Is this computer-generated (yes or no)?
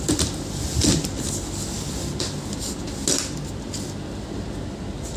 no